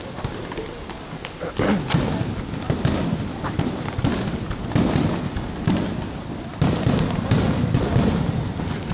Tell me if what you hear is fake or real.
real